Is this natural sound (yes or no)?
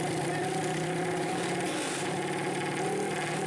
yes